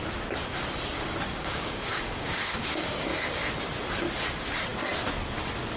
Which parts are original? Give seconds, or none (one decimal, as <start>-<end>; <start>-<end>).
0.0-1.3; 3.4-5.8